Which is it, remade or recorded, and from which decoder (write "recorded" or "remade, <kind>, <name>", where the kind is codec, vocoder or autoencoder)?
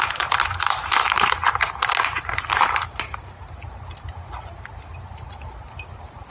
remade, vocoder, BigVGAN v2